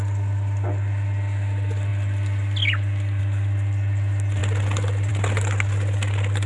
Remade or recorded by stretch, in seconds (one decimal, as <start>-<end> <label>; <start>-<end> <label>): 0.0-6.5 recorded